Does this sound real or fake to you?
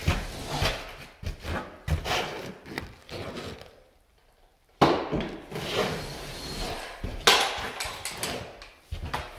real